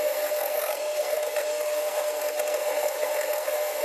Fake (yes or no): yes